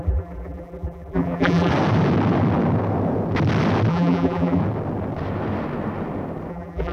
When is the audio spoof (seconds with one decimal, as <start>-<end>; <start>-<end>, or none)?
0.0-1.7; 3.9-4.6; 6.5-6.9